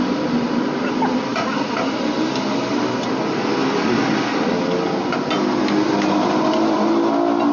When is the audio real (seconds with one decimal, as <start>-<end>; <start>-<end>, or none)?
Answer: 0.0-7.5